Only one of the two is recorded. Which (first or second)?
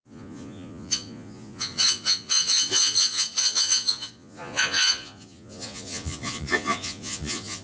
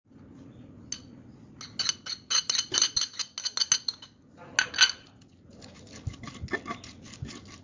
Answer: second